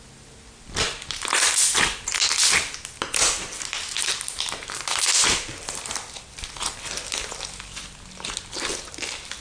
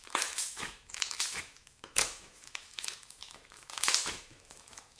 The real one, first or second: first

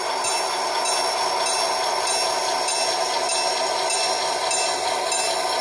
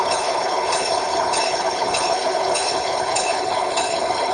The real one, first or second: first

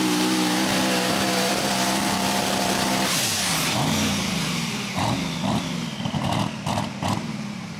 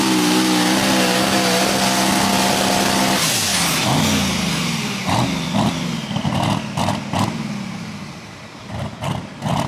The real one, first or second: second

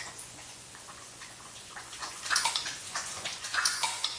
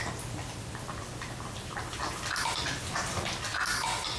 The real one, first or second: second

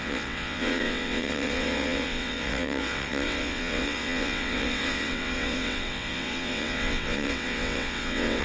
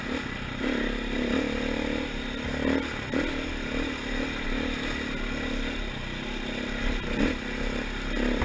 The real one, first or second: second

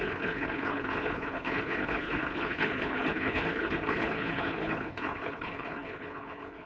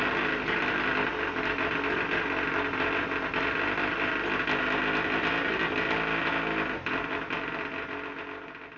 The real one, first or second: second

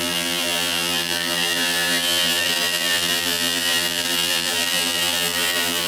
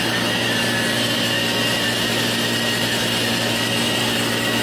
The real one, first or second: second